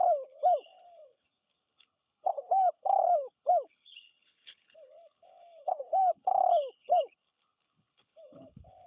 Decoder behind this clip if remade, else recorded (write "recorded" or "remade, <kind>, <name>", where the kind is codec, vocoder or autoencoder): remade, codec, HILCodec